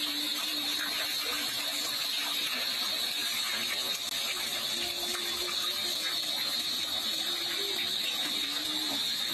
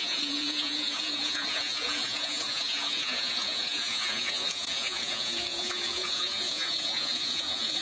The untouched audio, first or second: first